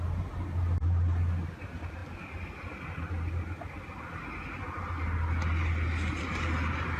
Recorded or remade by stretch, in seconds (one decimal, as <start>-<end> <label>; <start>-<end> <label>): 0.0-7.0 recorded